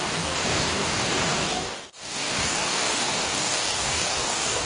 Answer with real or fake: fake